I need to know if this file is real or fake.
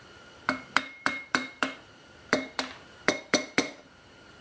fake